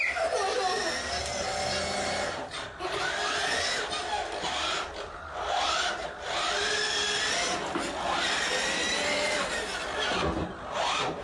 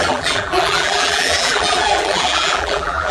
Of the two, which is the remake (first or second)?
second